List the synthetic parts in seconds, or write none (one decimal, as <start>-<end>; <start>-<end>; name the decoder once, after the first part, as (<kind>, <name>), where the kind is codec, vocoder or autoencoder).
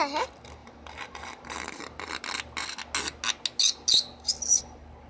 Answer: 0.6-2.2 (vocoder, BigVGAN v2)